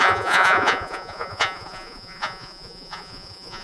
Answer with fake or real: fake